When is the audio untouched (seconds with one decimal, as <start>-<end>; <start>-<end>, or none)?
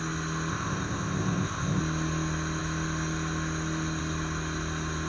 0.0-0.5; 1.8-5.1